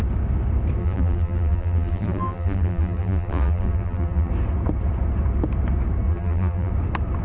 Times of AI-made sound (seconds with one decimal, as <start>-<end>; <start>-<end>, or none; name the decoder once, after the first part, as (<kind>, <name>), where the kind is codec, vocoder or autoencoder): 0.8-4.3 (vocoder, BigVGAN v2); 6.1-6.7